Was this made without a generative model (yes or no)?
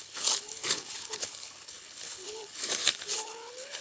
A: no